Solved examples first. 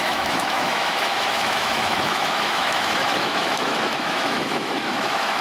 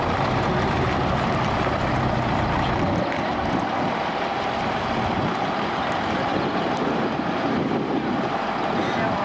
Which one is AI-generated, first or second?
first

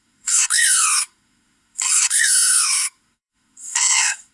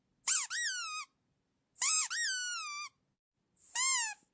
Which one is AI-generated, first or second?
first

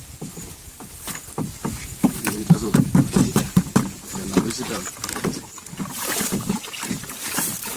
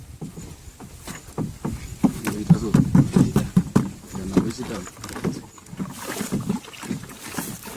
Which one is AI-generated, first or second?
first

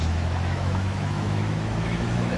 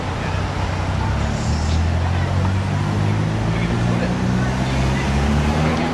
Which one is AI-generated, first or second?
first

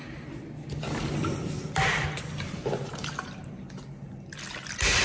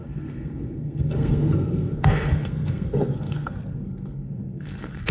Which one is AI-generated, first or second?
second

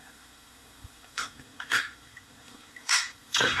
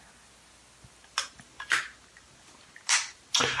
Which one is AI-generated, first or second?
first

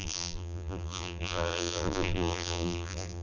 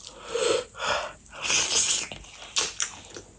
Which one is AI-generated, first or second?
first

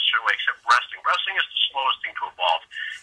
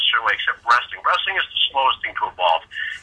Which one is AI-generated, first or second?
first